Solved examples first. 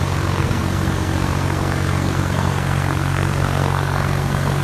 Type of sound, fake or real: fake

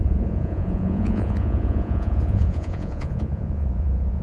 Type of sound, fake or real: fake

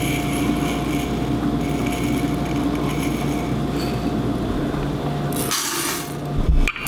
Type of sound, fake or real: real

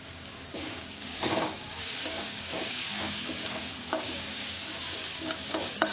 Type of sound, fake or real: fake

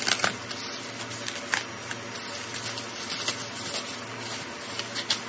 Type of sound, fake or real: real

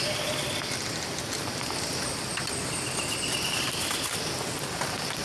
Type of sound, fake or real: real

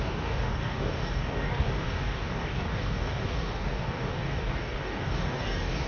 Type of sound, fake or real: fake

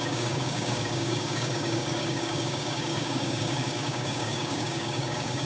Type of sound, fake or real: fake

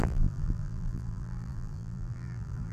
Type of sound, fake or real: fake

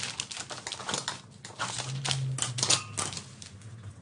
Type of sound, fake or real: real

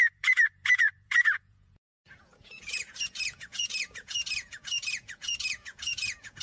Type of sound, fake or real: fake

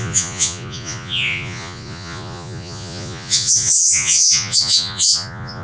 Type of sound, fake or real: fake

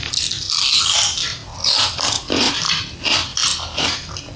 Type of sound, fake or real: real